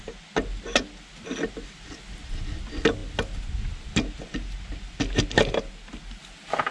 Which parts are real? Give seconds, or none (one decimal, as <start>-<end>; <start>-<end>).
0.0-6.7